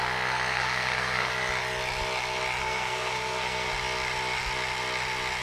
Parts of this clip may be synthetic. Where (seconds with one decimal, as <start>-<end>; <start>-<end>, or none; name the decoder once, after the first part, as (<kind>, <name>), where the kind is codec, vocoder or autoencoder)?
0.5-1.3 (codec, SNAC); 2.6-3.7